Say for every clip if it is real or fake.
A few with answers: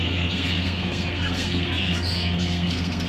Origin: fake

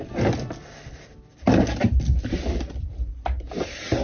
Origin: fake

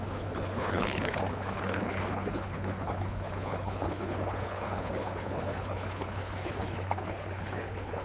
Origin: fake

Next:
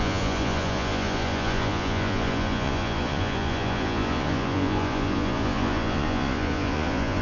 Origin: fake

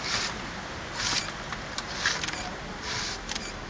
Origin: real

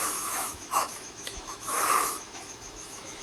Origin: fake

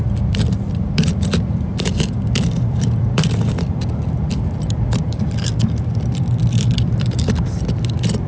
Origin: fake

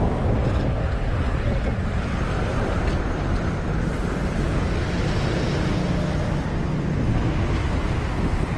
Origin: real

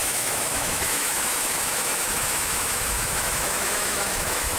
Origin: fake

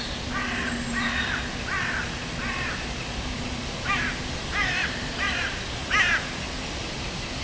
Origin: real